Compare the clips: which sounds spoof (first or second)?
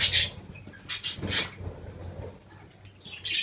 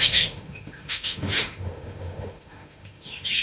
second